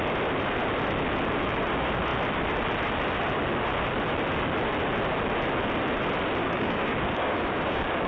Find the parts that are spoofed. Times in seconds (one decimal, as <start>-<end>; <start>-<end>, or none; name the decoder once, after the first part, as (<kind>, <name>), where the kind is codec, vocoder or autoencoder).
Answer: 6.4-8.1 (codec, DAC)